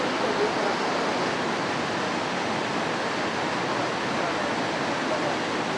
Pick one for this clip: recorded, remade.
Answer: recorded